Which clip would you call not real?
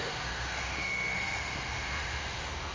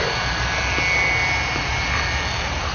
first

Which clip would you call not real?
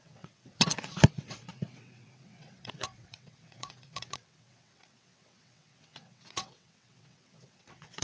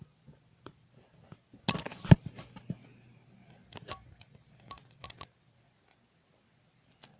first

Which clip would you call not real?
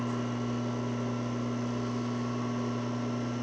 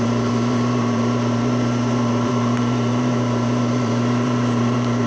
second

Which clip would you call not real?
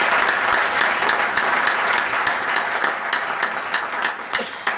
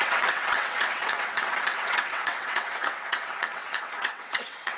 second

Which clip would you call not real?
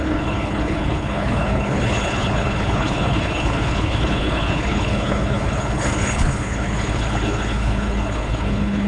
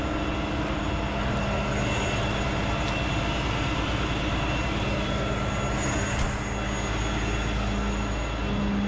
first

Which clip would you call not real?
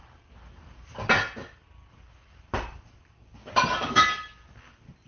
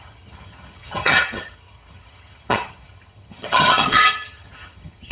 second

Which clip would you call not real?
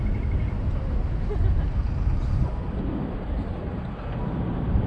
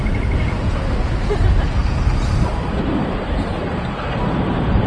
second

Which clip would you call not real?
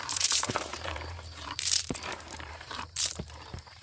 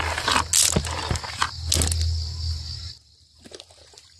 first